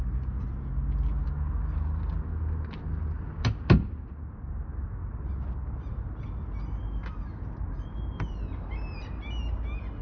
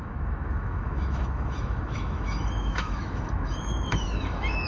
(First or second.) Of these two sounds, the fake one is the second